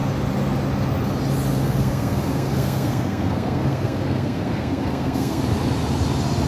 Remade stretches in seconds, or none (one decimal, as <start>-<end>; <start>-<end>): 1.5-5.4